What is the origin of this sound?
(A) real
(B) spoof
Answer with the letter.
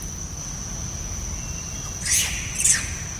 A